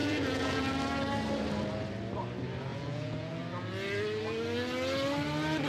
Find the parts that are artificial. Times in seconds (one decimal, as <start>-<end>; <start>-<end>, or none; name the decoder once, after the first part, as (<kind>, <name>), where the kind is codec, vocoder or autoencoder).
0.0-0.6 (vocoder, Vocos); 2.7-3.4